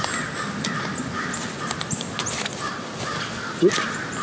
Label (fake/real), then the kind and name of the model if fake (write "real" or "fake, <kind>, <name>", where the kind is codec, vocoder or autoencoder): real